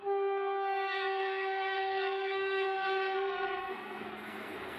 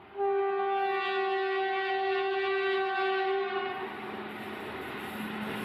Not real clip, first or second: first